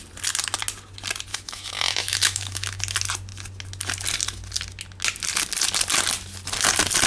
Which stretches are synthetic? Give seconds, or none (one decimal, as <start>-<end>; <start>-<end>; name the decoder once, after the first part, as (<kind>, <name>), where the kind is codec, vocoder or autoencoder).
1.3-2.8 (autoencoder, DAC-VAE)